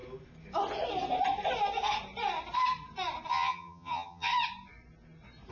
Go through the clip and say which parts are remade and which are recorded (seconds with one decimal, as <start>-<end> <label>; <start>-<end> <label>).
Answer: 0.0-3.3 recorded; 3.3-4.3 remade; 4.3-5.5 recorded